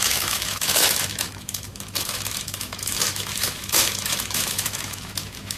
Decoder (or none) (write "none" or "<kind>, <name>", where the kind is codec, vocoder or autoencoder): autoencoder, DAC-VAE